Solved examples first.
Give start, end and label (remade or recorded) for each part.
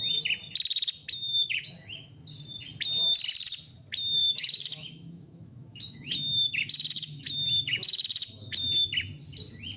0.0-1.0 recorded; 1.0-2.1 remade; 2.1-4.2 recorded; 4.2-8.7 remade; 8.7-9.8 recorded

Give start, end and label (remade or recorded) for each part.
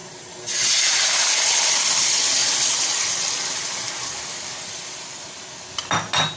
0.0-6.4 recorded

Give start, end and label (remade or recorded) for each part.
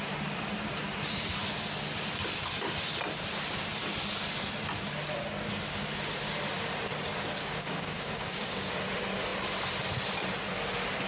0.0-7.4 recorded; 7.4-8.7 remade; 8.7-11.1 recorded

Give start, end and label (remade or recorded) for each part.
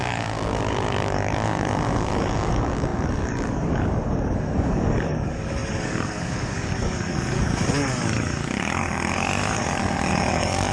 0.0-10.7 remade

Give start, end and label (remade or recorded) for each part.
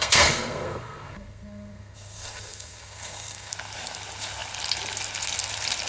0.0-3.5 remade; 3.5-5.9 recorded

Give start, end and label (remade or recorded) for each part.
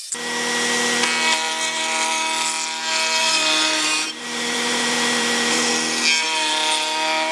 0.0-3.2 recorded; 3.2-5.7 remade; 5.7-7.3 recorded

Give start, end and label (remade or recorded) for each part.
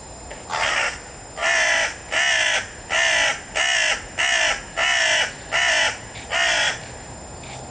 0.0-7.7 recorded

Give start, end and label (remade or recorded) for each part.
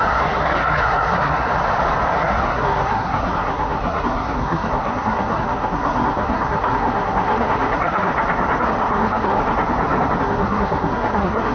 0.0-1.5 remade; 1.5-2.1 recorded; 2.1-8.1 remade; 8.1-8.6 recorded; 8.6-9.4 remade; 9.4-10.2 recorded; 10.2-11.5 remade